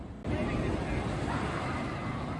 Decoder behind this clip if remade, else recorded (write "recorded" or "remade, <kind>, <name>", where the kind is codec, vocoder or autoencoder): recorded